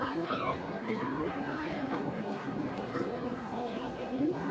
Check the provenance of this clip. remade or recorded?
remade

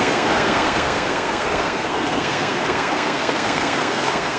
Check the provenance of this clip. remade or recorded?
remade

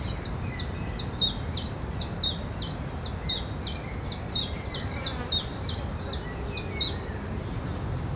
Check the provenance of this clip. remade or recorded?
recorded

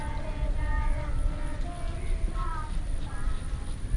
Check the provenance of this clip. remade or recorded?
recorded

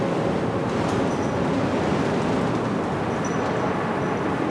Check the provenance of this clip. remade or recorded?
recorded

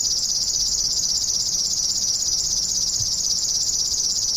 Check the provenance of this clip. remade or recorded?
recorded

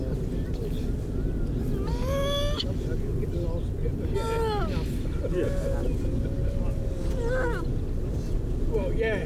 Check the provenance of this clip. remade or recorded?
recorded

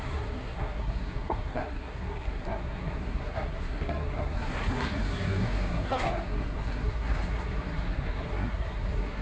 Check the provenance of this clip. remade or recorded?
remade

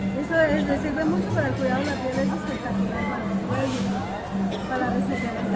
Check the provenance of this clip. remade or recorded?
recorded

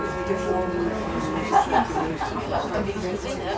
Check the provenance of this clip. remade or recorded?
recorded